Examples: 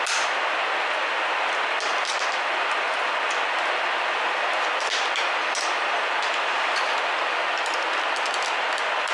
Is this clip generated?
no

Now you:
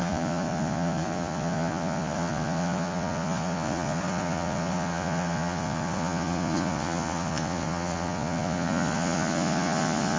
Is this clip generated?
yes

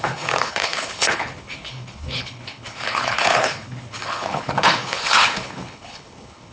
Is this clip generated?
yes